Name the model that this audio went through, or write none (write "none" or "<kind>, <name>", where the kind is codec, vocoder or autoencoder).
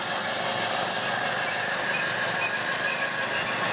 none